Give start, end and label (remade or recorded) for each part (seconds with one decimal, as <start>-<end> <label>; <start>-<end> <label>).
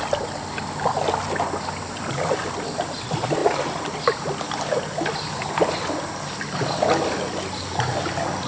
0.0-8.5 recorded